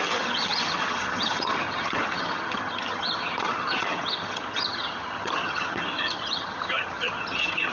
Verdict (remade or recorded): remade